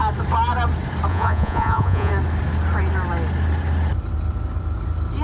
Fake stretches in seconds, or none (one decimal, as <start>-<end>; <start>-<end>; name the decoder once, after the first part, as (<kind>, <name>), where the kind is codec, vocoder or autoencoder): 1.1-2.1 (vocoder, Vocos)